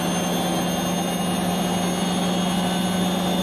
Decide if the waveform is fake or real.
real